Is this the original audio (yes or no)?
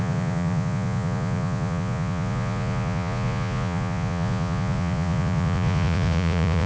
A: no